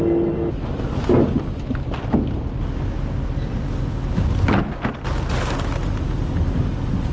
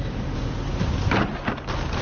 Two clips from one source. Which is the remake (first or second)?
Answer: second